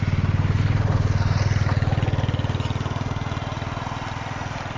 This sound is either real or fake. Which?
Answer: real